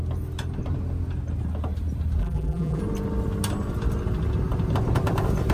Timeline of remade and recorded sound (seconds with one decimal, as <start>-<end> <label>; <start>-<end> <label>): 0.0-2.2 recorded; 2.2-2.8 remade; 2.8-5.5 recorded